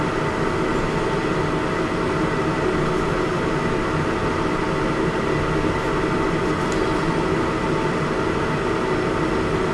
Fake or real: real